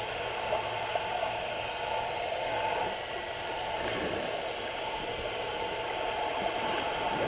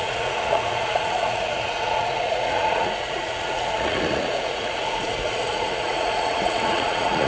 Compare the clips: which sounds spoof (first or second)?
second